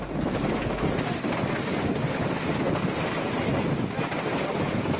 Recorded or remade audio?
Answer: recorded